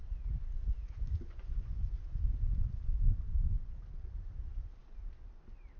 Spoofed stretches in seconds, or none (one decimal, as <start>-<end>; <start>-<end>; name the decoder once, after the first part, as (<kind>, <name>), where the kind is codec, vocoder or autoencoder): 0.8-2.4 (vocoder, Vocos); 3.3-3.9